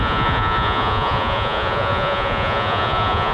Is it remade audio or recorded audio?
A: remade